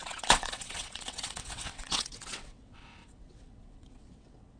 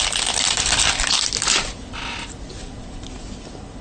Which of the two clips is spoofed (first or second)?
first